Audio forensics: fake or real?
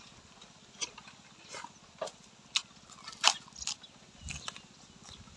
real